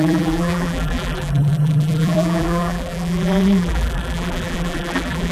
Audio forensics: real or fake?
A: fake